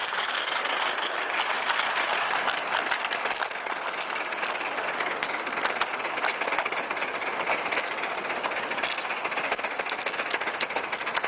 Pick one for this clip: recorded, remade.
recorded